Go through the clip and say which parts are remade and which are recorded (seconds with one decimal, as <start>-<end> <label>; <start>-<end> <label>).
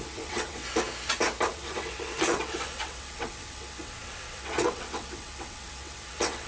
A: 0.0-0.6 remade; 0.6-1.5 recorded; 1.5-6.5 remade